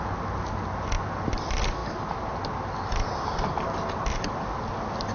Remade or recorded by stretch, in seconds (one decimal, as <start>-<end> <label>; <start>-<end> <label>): 0.0-5.1 recorded